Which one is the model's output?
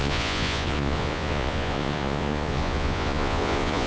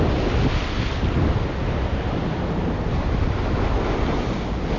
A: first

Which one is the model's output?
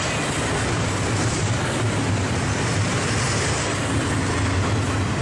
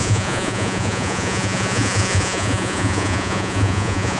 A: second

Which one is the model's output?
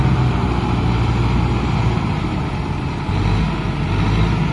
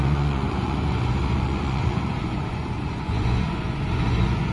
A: second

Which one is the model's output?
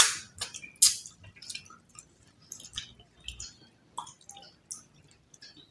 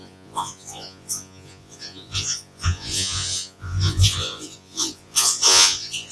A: second